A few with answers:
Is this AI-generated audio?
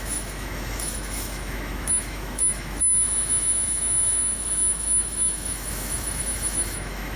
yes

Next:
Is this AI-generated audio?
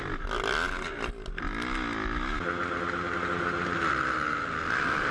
no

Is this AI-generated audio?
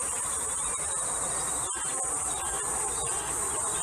no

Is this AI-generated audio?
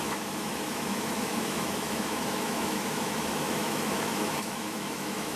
yes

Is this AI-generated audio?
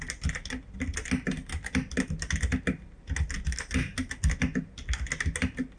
no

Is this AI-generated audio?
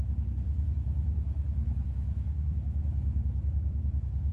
yes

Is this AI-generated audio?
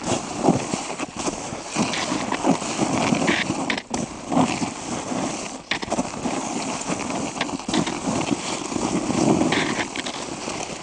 no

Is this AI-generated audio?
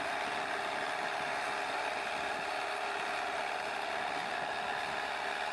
no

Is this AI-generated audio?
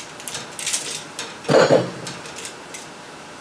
no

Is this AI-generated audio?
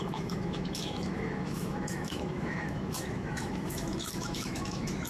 yes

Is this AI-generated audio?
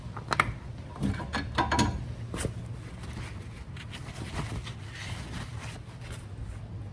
no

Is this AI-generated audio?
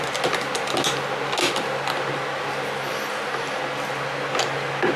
no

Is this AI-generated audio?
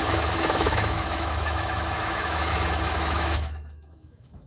yes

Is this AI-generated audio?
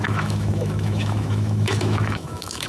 yes